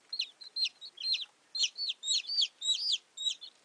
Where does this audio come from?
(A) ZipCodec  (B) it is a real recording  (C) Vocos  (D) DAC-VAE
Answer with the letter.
B